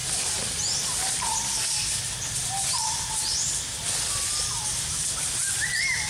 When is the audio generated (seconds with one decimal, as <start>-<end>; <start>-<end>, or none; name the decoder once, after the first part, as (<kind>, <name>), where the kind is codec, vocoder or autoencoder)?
none